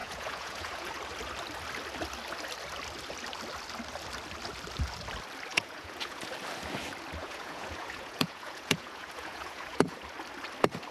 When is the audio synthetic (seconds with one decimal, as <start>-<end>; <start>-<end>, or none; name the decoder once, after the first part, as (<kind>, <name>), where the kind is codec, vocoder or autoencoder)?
0.0-0.9 (vocoder, Vocos); 5.5-6.2; 7.2-10.0